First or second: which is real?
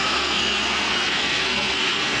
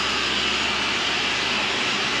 second